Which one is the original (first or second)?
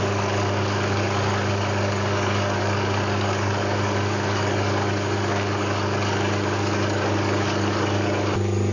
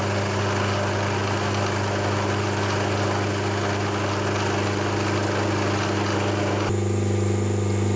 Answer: second